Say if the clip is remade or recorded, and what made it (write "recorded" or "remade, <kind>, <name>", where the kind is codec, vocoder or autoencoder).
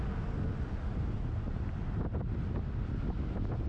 recorded